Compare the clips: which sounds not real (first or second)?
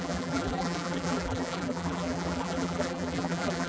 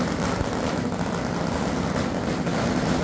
first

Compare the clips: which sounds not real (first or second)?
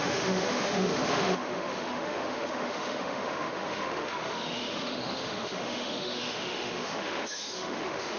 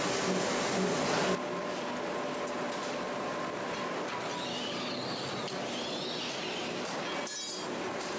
first